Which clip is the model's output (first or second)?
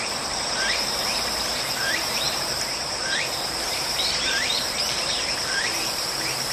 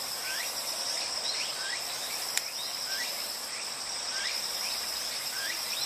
first